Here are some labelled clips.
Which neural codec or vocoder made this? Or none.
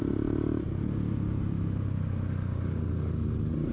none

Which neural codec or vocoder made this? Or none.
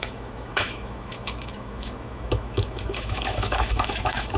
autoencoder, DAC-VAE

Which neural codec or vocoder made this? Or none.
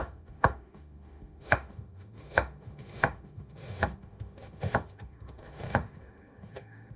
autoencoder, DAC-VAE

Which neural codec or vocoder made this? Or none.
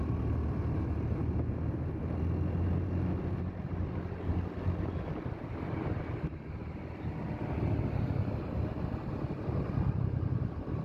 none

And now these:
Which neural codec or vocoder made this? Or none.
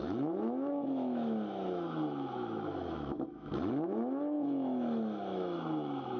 autoencoder, DAC-VAE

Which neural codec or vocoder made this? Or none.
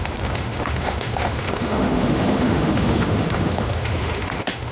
autoencoder, DAC-VAE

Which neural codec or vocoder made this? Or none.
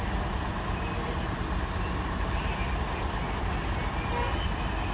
none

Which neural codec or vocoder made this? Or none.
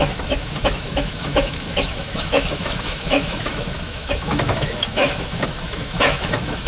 autoencoder, DAC-VAE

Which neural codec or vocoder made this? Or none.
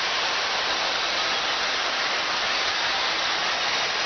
none